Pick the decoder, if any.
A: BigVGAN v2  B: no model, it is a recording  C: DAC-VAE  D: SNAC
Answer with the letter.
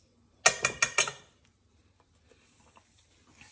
B